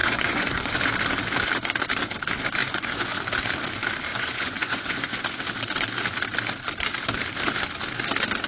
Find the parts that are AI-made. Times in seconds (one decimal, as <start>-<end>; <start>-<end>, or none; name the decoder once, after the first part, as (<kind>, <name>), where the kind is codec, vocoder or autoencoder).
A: 0.0-0.7 (vocoder, Vocos); 2.6-3.2; 4.1-5.2